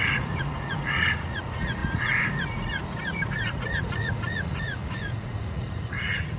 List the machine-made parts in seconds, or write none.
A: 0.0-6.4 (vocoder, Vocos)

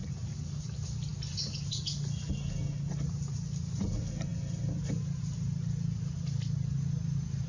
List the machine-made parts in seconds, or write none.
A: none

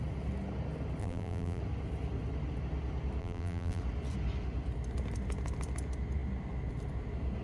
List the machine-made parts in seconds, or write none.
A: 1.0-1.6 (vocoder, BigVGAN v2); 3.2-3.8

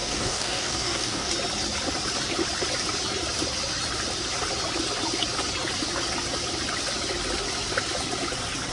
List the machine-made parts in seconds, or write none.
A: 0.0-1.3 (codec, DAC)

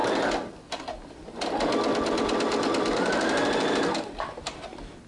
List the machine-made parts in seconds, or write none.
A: none

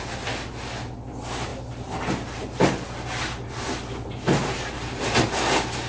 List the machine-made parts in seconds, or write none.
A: none